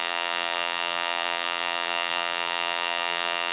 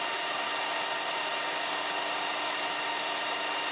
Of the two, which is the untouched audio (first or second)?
second